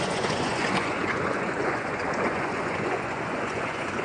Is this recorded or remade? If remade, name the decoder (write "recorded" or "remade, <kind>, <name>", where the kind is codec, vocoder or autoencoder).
remade, vocoder, Vocos